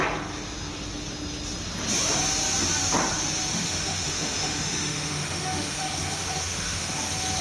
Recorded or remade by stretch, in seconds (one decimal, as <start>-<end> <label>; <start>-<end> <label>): 0.0-3.5 recorded; 3.5-6.9 remade; 6.9-7.4 recorded